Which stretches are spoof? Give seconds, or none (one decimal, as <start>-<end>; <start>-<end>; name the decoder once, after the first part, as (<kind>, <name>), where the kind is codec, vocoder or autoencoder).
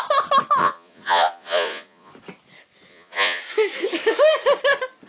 0.6-2.1 (vocoder, Vocos); 2.9-3.4